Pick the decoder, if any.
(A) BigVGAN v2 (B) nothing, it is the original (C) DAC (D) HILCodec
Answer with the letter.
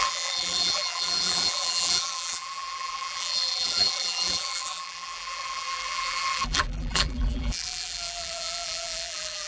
A